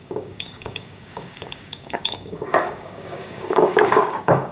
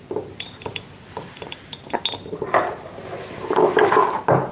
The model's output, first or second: first